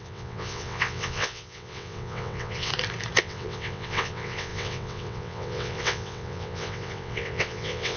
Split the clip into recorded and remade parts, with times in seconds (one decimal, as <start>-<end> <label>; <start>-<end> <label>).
0.0-2.7 remade; 2.7-3.2 recorded; 3.2-8.0 remade